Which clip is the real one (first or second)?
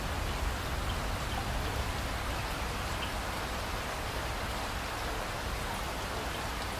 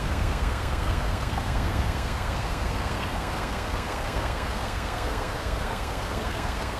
first